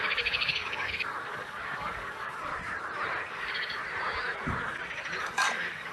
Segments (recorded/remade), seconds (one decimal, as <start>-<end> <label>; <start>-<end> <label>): 0.0-2.5 remade; 2.5-3.3 recorded; 3.3-3.8 remade; 3.8-5.2 recorded; 5.2-5.9 remade